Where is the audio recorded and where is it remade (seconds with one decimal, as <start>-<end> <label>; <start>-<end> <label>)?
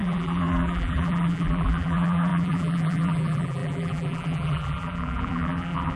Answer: 0.0-6.0 remade